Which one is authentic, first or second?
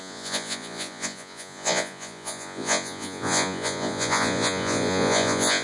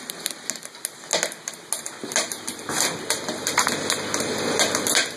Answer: second